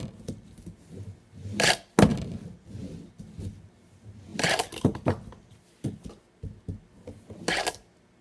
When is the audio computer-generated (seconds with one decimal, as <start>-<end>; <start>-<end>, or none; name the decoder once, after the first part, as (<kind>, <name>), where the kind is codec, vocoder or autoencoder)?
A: 2.1-2.8 (vocoder, BigVGAN v2); 4.3-5.9